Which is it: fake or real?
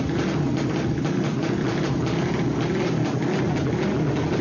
real